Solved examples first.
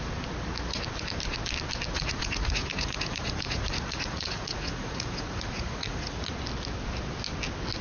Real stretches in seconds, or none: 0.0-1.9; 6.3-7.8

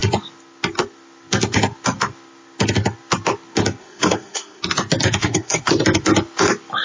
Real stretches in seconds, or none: 0.0-3.8; 4.6-5.2; 5.7-6.8

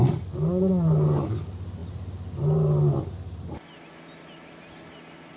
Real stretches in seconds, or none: 0.0-5.4

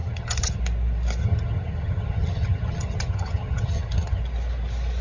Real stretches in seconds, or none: 0.6-1.2; 4.2-5.0

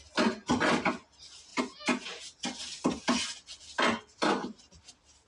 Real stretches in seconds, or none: 0.0-5.3

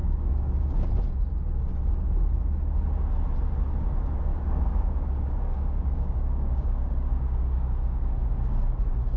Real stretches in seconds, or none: 0.9-4.3; 8.5-9.2

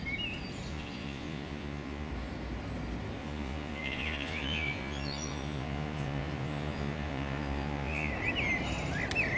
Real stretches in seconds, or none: 0.0-0.7; 2.1-3.2; 8.1-9.4